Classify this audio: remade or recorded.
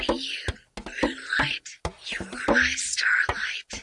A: recorded